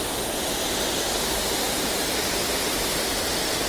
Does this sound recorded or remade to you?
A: recorded